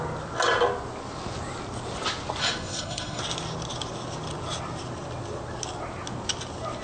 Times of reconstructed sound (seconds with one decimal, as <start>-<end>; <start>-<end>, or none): 2.4-3.2